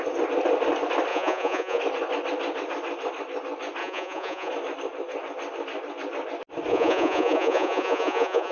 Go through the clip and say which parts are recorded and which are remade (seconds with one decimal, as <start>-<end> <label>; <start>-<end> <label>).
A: 0.0-1.1 recorded; 1.1-1.8 remade; 1.8-3.8 recorded; 3.8-4.5 remade; 4.5-6.7 recorded; 6.7-8.5 remade